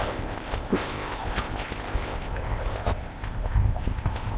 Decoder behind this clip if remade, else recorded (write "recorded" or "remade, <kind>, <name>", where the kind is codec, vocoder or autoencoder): remade, codec, ZipCodec